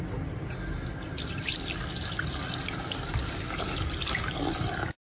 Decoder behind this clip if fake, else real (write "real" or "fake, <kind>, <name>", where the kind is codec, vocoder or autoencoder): real